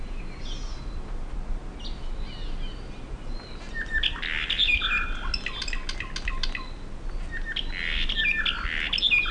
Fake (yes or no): no